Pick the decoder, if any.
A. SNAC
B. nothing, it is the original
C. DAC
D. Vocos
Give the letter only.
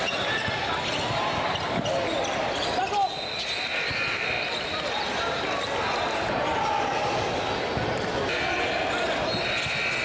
B